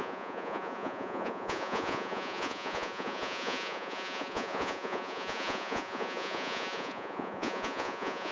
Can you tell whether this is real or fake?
fake